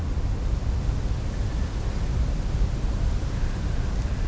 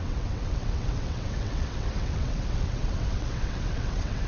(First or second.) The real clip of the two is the first